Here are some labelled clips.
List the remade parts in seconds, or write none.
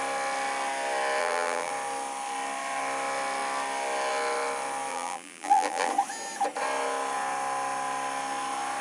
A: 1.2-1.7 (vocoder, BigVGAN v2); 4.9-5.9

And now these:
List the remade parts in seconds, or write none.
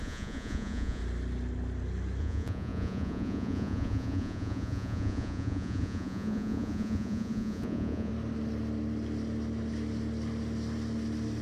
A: 0.0-1.0 (vocoder, Vocos); 2.2-8.1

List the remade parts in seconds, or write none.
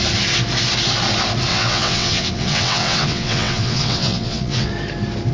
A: 1.5-4.7 (vocoder, WaveNeXt)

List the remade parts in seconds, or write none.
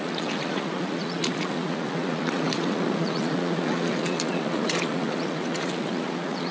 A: 0.0-6.5 (vocoder, Vocos)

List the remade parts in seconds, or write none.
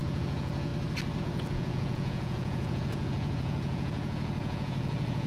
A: 0.0-0.7 (vocoder, Vocos); 1.2-5.3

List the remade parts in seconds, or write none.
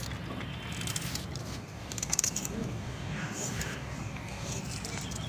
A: 1.4-4.6 (codec, DAC)